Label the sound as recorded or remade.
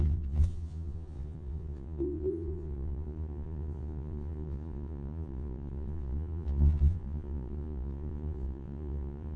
remade